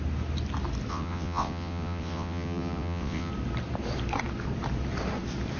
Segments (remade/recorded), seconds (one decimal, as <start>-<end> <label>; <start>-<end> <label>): 0.0-0.9 recorded; 0.9-3.3 remade; 3.3-5.6 recorded

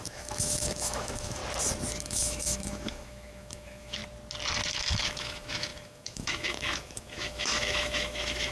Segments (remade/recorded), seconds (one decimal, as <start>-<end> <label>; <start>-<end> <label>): 0.0-1.4 remade; 1.4-2.0 recorded; 2.0-4.0 remade; 4.0-4.7 recorded; 4.7-8.5 remade

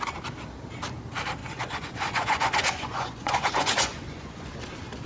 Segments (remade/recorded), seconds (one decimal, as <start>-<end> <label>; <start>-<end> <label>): 0.0-1.4 recorded; 1.4-4.5 remade; 4.5-5.1 recorded

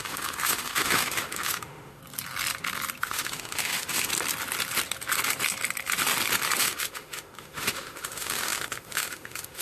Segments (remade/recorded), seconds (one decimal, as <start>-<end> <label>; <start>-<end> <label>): 0.0-2.0 remade; 2.0-3.0 recorded; 3.0-4.1 remade; 4.1-6.6 recorded; 6.6-9.6 remade

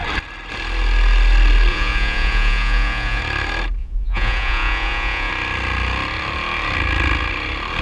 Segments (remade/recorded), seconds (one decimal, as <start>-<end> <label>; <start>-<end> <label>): 0.0-1.7 recorded; 1.7-3.2 remade; 3.2-3.8 recorded; 3.8-5.3 remade; 5.3-7.8 recorded

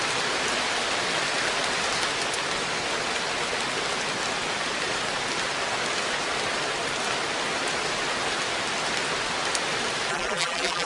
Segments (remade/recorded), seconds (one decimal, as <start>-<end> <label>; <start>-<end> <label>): 0.0-10.1 recorded; 10.1-10.9 remade